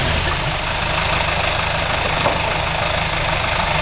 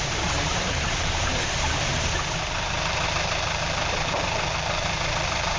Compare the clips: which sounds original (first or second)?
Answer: first